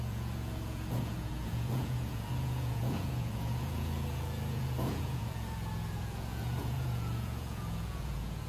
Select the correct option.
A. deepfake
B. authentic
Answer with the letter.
A